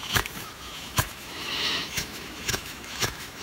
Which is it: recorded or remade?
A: remade